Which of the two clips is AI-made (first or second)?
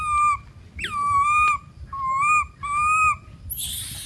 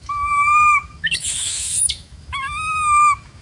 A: second